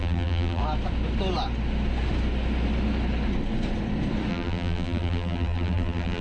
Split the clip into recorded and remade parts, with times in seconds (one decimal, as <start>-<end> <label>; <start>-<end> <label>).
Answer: 0.0-0.6 remade; 0.6-4.3 recorded; 4.3-6.2 remade